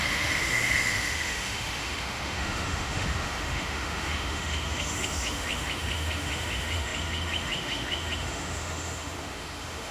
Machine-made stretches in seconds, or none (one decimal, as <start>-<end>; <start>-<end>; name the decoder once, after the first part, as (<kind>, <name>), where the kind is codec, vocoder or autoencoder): 0.0-9.9 (autoencoder, DAC-VAE)